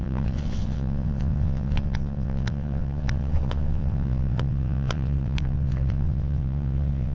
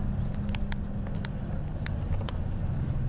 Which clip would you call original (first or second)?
second